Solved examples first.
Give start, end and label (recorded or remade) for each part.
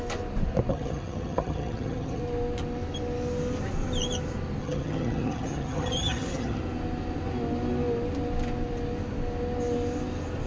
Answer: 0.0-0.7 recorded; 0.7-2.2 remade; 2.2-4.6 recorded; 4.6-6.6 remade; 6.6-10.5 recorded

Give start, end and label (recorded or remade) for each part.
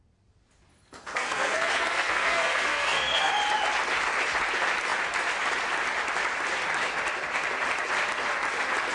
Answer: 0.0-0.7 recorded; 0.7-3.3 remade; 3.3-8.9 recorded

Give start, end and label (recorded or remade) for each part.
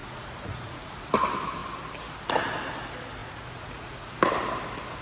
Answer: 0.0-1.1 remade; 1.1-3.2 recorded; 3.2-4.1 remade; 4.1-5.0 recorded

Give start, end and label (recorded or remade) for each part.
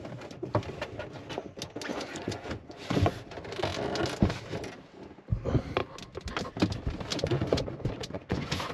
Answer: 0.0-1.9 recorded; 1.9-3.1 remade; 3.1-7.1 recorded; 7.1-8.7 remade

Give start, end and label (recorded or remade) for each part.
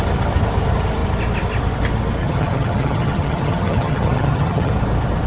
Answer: 0.0-2.2 recorded; 2.2-4.7 remade; 4.7-5.3 recorded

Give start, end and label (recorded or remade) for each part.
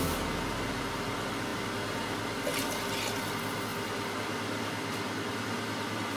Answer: 0.0-6.2 recorded